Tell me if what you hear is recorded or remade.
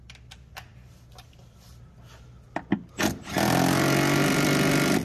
recorded